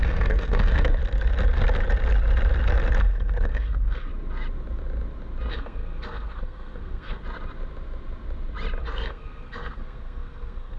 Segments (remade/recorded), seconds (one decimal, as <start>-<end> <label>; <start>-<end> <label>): 0.0-1.0 remade; 1.0-3.0 recorded; 3.0-4.1 remade; 4.1-5.5 recorded; 5.5-7.2 remade; 7.2-8.8 recorded; 8.8-10.8 remade